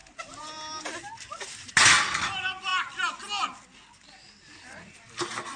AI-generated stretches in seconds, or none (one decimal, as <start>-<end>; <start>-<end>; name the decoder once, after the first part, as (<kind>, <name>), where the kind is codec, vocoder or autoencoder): none